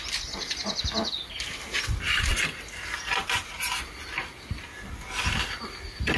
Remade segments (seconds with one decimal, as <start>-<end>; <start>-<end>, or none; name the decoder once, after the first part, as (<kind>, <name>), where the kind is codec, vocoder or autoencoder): none